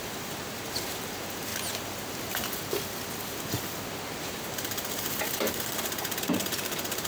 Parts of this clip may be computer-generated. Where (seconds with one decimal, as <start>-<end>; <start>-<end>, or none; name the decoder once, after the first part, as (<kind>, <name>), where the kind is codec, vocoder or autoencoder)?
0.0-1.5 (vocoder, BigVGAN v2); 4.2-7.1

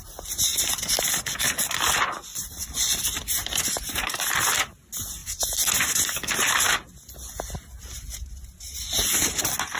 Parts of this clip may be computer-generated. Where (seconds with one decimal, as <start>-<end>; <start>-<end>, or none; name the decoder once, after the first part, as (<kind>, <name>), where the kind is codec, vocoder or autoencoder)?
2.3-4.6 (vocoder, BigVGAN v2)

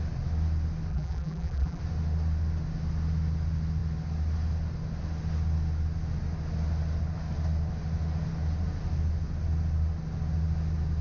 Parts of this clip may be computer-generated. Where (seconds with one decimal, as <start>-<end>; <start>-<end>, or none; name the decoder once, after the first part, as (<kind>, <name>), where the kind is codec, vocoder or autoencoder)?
0.9-1.8 (vocoder, BigVGAN v2)